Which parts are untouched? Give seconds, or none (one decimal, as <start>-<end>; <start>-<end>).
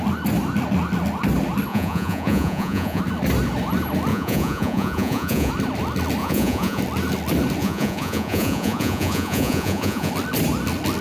0.0-1.7; 3.0-4.1; 5.5-6.2; 6.8-7.6; 10.1-11.0